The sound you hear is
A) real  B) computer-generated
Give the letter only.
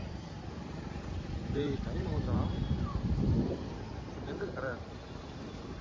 B